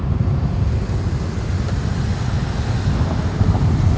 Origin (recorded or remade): recorded